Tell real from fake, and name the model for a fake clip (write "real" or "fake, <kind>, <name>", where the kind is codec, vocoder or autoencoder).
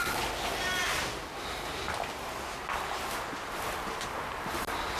real